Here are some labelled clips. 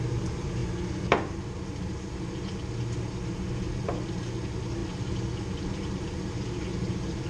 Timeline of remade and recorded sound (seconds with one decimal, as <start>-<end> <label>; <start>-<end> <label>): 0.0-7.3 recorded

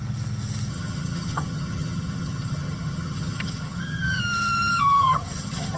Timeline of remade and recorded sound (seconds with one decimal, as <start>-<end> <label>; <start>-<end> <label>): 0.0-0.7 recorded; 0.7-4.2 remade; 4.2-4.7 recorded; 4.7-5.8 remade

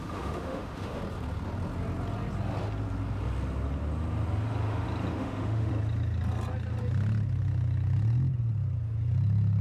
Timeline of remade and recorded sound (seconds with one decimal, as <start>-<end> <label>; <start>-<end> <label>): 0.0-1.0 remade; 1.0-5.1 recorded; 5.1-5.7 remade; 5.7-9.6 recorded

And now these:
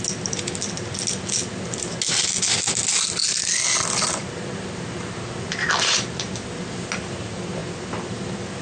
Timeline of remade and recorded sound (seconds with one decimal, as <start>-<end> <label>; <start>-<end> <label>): 0.0-8.6 recorded

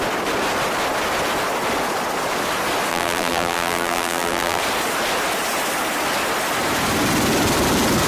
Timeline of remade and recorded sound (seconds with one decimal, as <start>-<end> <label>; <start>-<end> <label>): 0.0-2.9 recorded; 2.9-4.6 remade; 4.6-8.1 recorded